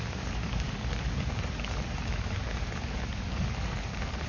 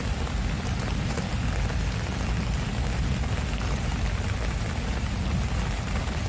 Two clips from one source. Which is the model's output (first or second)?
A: first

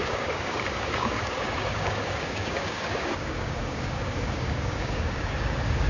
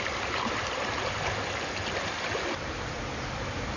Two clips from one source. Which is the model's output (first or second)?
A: first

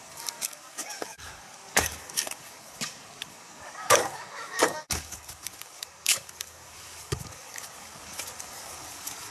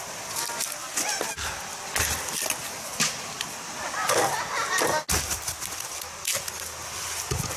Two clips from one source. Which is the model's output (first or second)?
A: first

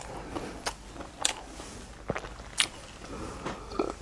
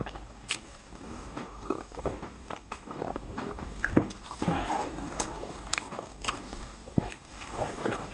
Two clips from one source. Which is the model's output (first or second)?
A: second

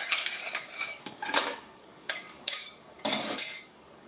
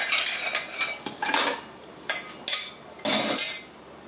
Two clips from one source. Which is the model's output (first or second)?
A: first